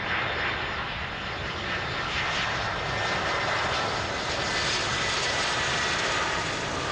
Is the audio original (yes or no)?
yes